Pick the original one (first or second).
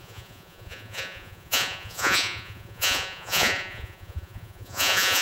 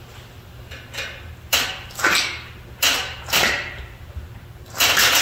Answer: second